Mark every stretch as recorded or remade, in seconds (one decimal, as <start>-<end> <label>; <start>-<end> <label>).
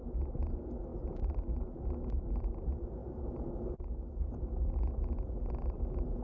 0.0-6.2 recorded